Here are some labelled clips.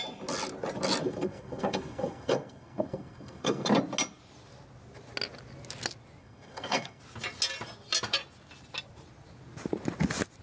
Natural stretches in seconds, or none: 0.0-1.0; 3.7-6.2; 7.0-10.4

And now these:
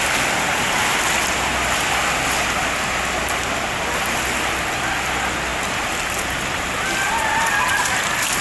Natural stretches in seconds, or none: 0.0-8.4

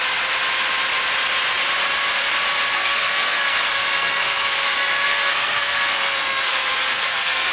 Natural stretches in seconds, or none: 0.0-2.7